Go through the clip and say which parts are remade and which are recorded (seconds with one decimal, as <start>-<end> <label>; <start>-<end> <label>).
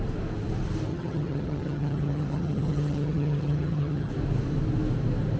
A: 0.0-0.9 recorded; 0.9-4.1 remade; 4.1-5.4 recorded